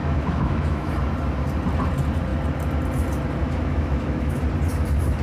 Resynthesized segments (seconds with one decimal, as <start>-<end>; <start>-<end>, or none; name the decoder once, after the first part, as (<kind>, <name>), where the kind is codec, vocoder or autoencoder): 0.0-0.9 (autoencoder, DAC-VAE); 3.4-4.4